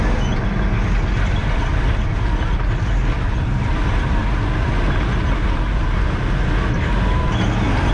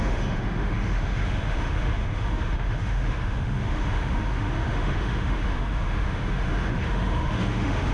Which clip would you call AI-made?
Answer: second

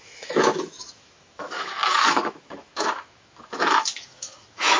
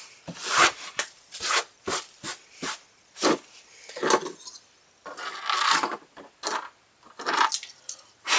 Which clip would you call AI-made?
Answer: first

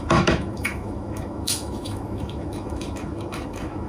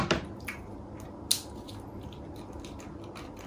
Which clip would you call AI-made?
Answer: first